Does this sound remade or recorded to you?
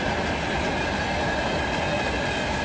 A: recorded